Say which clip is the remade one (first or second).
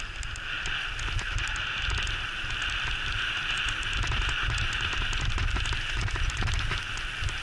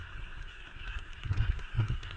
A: second